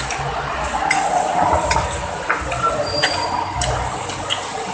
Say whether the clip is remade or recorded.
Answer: recorded